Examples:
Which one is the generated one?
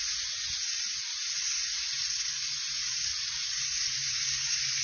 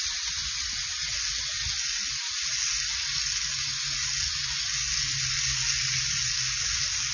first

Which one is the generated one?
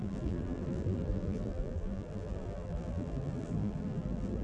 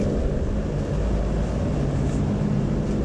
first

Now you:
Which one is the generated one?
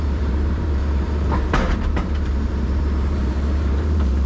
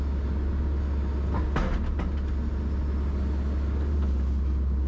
first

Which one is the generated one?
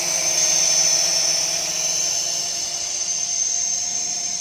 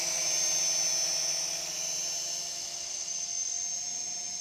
first